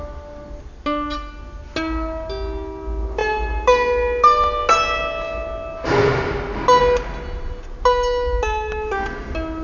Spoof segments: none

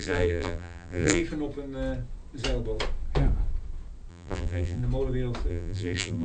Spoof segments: 0.0-1.2 (vocoder, BigVGAN v2); 4.1-4.8; 5.5-6.2